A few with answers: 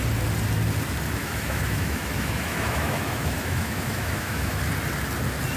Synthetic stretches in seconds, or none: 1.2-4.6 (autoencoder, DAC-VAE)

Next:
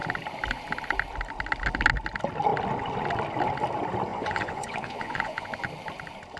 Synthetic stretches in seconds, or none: 4.1-5.5 (vocoder, Vocos)

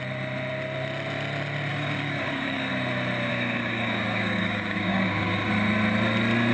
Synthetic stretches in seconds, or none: 1.7-2.7 (codec, DAC); 3.3-5.5